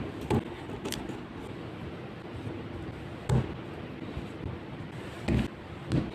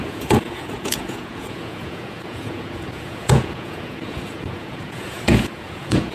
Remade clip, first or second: second